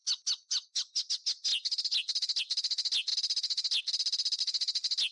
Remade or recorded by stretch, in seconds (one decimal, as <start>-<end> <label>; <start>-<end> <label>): 0.0-5.1 recorded